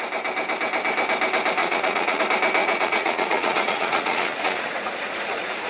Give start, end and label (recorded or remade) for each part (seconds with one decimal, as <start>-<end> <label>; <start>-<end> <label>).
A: 0.0-1.6 recorded; 1.6-2.2 remade; 2.2-2.6 recorded; 2.6-5.7 remade